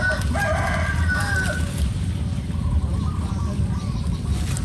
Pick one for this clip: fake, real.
real